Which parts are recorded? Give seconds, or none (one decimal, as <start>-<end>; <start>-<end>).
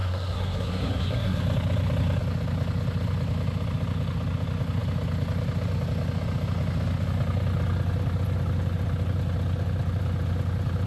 1.4-10.9